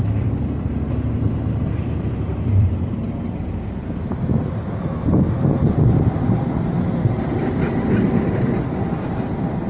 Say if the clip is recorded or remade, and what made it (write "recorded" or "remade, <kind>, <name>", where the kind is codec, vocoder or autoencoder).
remade, vocoder, BigVGAN v2